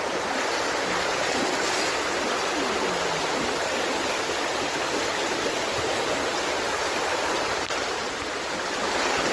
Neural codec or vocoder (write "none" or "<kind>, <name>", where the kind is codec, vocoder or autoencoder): vocoder, BigVGAN v2